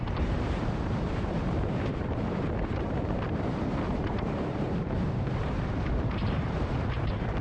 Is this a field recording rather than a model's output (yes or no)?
no